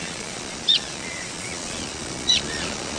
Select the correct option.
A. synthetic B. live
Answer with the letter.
A